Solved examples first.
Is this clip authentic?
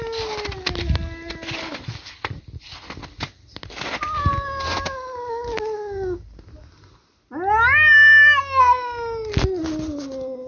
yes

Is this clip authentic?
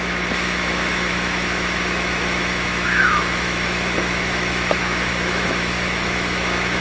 no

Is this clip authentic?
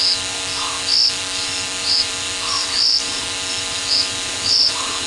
no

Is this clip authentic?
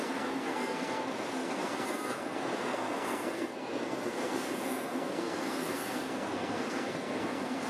no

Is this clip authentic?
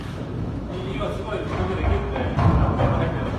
no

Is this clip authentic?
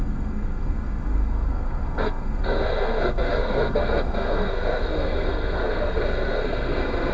no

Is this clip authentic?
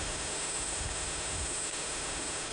no